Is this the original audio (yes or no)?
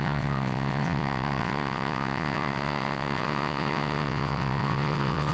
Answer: no